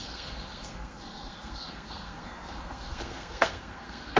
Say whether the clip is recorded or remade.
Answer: remade